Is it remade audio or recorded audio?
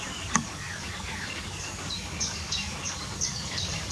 remade